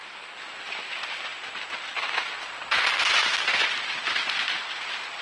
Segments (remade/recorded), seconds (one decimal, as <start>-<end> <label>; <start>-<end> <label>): 0.0-0.7 remade; 0.7-5.2 recorded